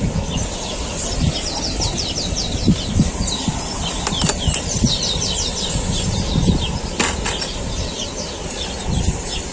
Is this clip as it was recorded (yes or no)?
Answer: yes